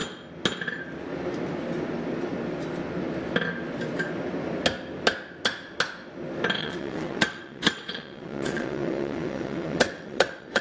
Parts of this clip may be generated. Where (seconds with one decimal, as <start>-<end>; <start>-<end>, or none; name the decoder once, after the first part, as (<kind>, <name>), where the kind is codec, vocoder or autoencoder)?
6.6-10.6 (vocoder, WaveNeXt)